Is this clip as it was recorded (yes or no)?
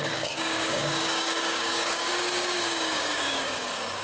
no